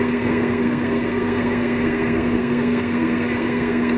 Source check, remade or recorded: remade